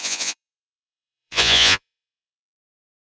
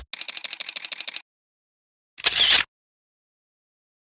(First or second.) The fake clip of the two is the first